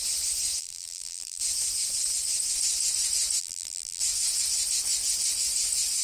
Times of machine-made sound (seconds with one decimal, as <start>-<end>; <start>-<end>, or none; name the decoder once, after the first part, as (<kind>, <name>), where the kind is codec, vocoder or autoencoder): 0.6-1.4 (vocoder, BigVGAN v2); 3.4-4.0